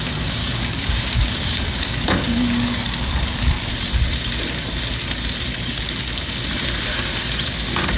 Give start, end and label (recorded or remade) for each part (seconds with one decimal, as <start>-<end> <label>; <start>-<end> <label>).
0.0-0.4 recorded; 0.4-3.7 remade; 3.7-5.5 recorded; 5.5-6.2 remade; 6.2-8.0 recorded